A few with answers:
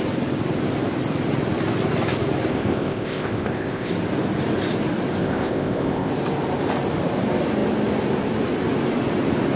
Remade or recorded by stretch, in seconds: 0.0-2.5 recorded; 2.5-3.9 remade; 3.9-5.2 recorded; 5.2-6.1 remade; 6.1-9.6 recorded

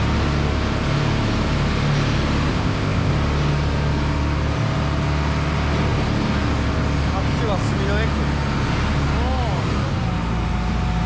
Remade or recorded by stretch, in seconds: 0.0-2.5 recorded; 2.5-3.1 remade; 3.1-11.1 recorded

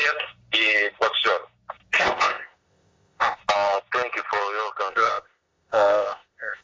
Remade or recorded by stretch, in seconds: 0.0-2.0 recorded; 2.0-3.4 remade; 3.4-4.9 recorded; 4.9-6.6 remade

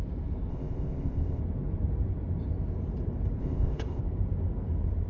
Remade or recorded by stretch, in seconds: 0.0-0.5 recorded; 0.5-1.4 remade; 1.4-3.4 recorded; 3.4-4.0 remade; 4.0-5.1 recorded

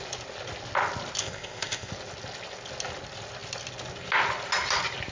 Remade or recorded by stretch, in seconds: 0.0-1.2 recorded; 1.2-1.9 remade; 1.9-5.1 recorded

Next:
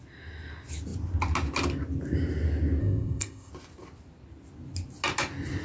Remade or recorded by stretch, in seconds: 0.0-2.8 recorded; 2.8-3.5 remade; 3.5-5.6 recorded

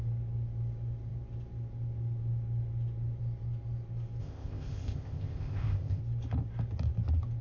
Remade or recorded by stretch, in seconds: 0.0-4.2 recorded; 4.2-6.0 remade; 6.0-7.4 recorded

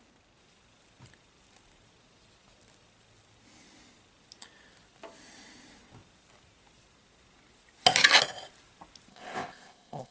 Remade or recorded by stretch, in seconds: 0.0-9.1 recorded; 9.1-10.1 remade